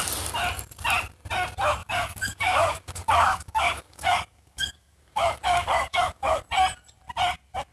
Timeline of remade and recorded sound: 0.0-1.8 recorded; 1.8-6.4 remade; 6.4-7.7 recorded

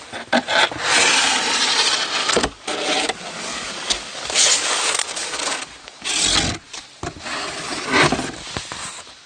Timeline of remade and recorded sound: 0.0-2.2 recorded; 2.2-6.1 remade; 6.1-9.3 recorded

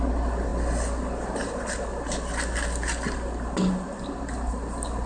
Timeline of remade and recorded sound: 0.0-5.1 recorded

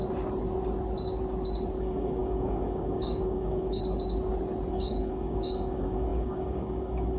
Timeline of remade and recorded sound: 0.0-1.8 recorded; 1.8-3.8 remade; 3.8-4.7 recorded; 4.7-7.2 remade

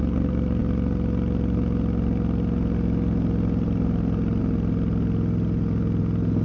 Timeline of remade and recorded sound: 0.0-6.4 recorded

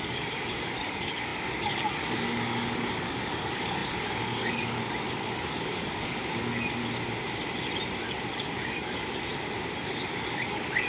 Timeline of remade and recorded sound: 0.0-6.8 remade; 6.8-8.4 recorded; 8.4-9.3 remade; 9.3-9.9 recorded; 9.9-10.9 remade